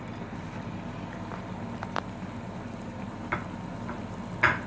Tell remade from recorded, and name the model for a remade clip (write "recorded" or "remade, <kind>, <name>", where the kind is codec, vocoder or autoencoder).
recorded